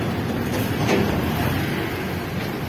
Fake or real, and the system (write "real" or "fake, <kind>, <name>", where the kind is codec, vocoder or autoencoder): real